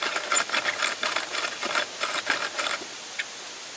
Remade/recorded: recorded